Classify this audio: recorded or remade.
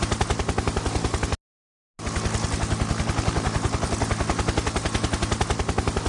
recorded